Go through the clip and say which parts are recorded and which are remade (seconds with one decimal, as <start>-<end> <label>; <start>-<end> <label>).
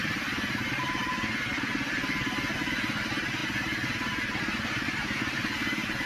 0.0-1.0 remade; 1.0-3.0 recorded; 3.0-3.4 remade; 3.4-4.4 recorded; 4.4-6.1 remade